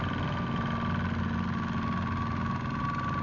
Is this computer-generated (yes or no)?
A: no